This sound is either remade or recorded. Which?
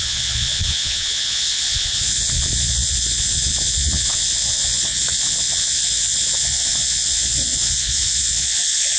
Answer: remade